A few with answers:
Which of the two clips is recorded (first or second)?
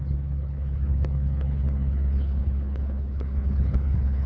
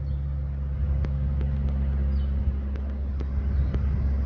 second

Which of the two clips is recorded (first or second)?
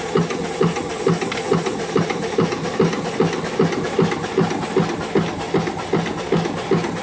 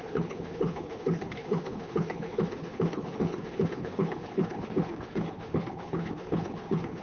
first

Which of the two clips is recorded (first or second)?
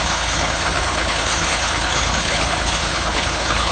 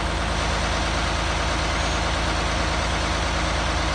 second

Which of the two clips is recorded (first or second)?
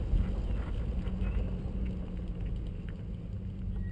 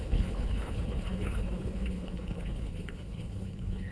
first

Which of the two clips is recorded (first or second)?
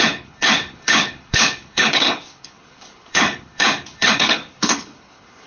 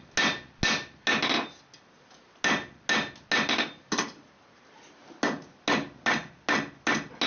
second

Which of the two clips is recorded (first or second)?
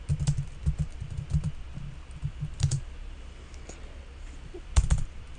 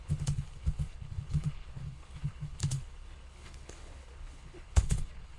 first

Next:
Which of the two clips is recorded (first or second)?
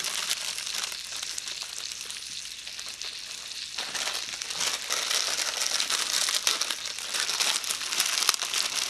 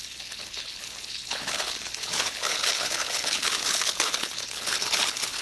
first